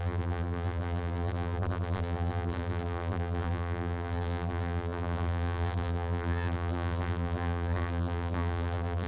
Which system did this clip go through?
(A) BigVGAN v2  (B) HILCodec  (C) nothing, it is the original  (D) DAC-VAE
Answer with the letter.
A